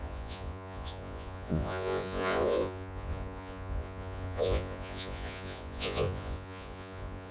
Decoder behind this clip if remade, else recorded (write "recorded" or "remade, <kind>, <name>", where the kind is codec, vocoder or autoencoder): remade, vocoder, Vocos